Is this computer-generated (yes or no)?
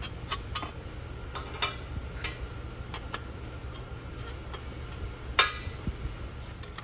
no